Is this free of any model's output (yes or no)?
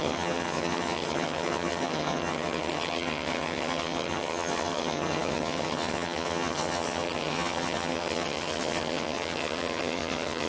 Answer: no